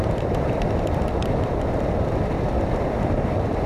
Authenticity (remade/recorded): remade